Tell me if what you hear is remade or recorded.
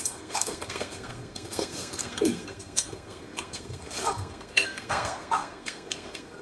remade